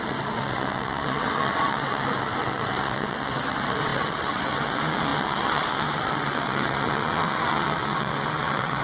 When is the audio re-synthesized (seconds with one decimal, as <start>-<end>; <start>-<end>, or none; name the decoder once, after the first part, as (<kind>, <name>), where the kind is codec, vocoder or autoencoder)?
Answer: 0.0-8.8 (vocoder, WaveNeXt)